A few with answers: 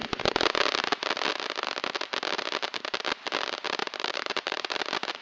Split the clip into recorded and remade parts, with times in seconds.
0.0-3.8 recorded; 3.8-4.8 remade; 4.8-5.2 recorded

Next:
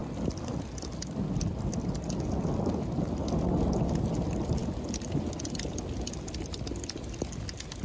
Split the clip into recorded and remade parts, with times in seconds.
0.0-7.8 recorded

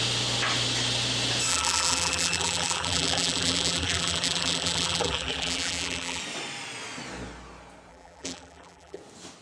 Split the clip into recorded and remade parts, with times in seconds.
0.0-1.5 recorded; 1.5-6.2 remade; 6.2-7.9 recorded; 7.9-9.0 remade; 9.0-9.4 recorded

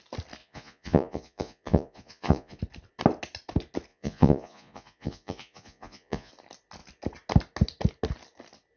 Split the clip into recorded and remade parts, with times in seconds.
0.0-0.4 recorded; 0.4-2.6 remade; 2.6-3.9 recorded; 3.9-6.3 remade; 6.3-8.8 recorded

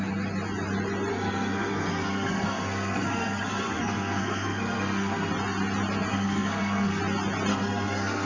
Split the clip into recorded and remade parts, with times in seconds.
0.0-1.1 recorded; 1.1-5.3 remade; 5.3-6.1 recorded; 6.1-7.0 remade; 7.0-7.5 recorded; 7.5-8.3 remade

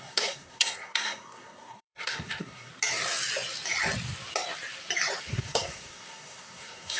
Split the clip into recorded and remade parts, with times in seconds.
0.0-2.7 remade; 2.7-5.2 recorded; 5.2-7.0 remade

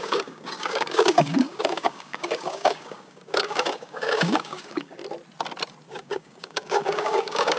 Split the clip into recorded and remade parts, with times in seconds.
0.0-5.0 remade; 5.0-5.9 recorded; 5.9-7.6 remade